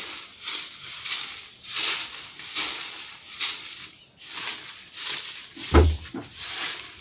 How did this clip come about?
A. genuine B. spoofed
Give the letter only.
A